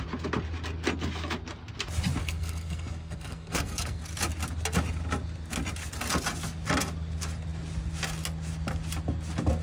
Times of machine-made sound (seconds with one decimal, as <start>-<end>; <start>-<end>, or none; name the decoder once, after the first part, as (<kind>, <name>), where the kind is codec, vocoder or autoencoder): 2.2-4.0 (codec, SNAC)